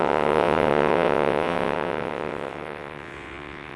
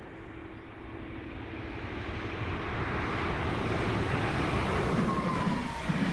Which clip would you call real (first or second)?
second